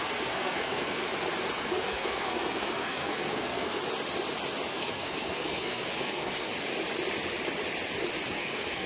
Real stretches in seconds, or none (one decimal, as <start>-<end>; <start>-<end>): 1.0-1.6; 3.8-4.7; 6.5-8.3